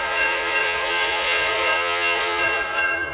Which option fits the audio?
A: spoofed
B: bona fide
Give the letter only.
A